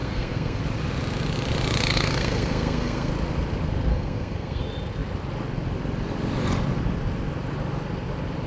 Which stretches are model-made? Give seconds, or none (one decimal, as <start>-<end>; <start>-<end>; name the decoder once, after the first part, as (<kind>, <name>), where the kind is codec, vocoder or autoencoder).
0.0-0.6 (codec, SNAC); 1.9-3.1; 3.9-4.6